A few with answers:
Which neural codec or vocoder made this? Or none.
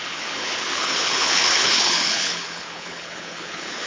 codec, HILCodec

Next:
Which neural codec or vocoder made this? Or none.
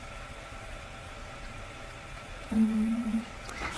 vocoder, Vocos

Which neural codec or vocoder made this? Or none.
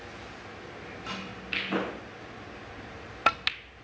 none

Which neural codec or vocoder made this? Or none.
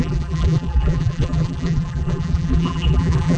vocoder, BigVGAN v2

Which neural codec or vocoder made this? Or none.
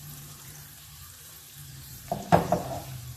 vocoder, BigVGAN v2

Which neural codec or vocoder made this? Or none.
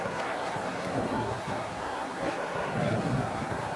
codec, SNAC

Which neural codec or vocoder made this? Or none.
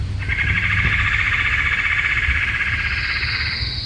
none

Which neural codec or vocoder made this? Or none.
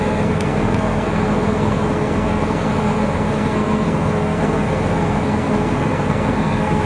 codec, SNAC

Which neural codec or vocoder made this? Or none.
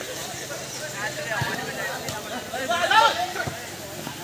none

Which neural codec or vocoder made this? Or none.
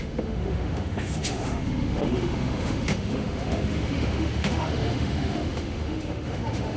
autoencoder, DAC-VAE